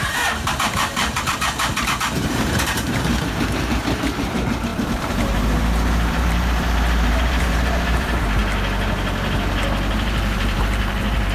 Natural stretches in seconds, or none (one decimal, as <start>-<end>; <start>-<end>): 8.4-9.9